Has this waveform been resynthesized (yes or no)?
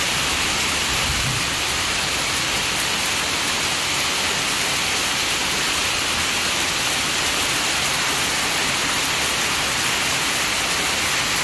no